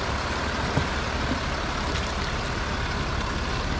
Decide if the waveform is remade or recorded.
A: recorded